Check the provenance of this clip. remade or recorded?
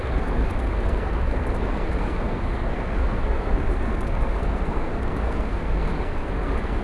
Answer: remade